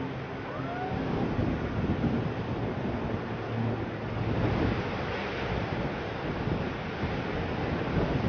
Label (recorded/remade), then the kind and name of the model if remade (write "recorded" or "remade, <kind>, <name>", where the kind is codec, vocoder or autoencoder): recorded